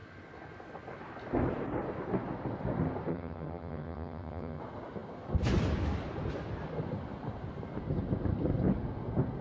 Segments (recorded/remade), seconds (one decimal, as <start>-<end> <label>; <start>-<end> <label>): 0.0-3.1 recorded; 3.1-4.6 remade; 4.6-9.4 recorded